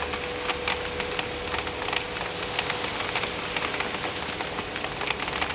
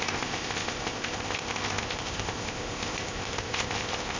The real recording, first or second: first